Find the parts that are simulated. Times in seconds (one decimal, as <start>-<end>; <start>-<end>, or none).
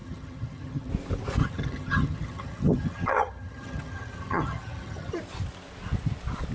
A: 0.0-0.9; 1.4-5.1